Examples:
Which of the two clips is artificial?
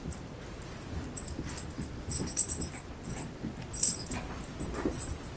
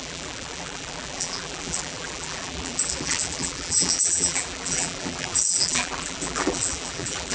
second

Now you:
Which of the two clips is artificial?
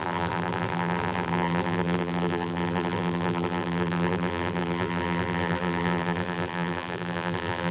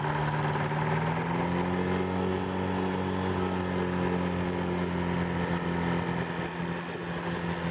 first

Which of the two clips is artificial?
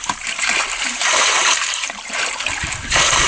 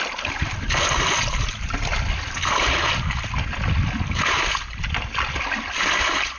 first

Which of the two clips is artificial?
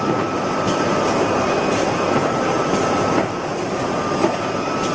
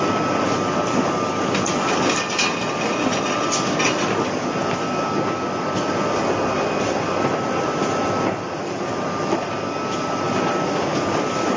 first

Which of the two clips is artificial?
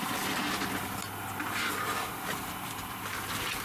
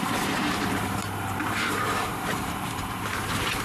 second